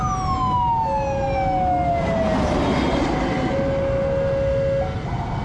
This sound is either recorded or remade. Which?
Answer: recorded